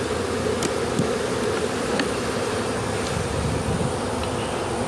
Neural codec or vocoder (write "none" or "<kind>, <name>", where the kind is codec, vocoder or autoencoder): none